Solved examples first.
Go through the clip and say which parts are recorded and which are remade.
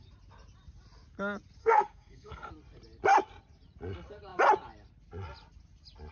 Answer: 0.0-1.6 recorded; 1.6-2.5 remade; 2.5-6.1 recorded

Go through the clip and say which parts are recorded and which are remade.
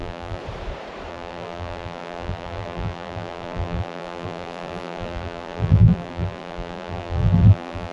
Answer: 0.0-0.4 remade; 0.4-1.1 recorded; 1.1-7.9 remade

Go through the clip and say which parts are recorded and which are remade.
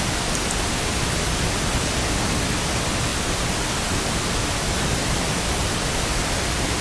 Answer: 0.0-6.8 recorded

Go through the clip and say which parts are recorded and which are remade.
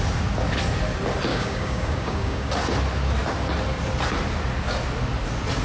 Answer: 0.0-1.3 recorded; 1.3-2.5 remade; 2.5-5.6 recorded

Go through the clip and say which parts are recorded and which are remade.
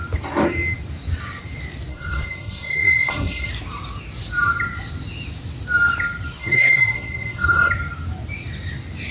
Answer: 0.0-1.9 recorded; 1.9-3.5 remade; 3.5-6.4 recorded; 6.4-7.7 remade; 7.7-9.1 recorded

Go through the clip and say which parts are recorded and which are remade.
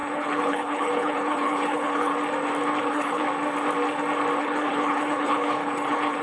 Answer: 0.0-2.1 remade; 2.1-2.8 recorded; 2.8-3.2 remade; 3.2-4.4 recorded; 4.4-6.2 remade